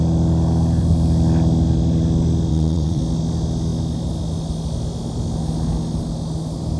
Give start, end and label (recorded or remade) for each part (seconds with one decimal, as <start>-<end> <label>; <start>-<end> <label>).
0.0-2.5 recorded; 2.5-3.0 remade; 3.0-6.8 recorded